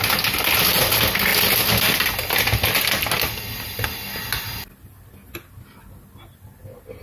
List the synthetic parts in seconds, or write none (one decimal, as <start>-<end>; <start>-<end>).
none